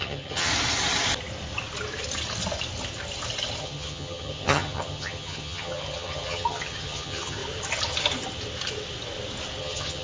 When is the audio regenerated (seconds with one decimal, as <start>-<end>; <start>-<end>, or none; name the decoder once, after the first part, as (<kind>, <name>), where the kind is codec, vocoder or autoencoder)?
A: 0.0-0.5 (vocoder, HiFi-GAN); 3.6-7.4; 9.6-10.0

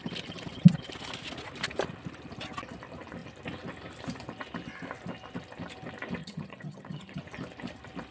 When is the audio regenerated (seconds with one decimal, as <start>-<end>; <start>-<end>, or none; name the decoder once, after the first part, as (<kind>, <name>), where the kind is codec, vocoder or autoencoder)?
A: 6.2-7.2 (vocoder, HiFi-GAN)